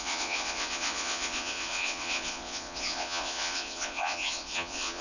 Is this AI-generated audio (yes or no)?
yes